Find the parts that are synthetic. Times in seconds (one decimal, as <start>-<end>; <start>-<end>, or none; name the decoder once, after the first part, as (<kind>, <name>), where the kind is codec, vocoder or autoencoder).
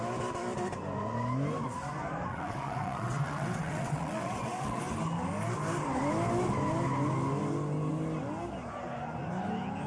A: 2.3-4.8 (vocoder, WaveNeXt)